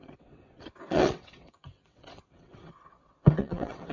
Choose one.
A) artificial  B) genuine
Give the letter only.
A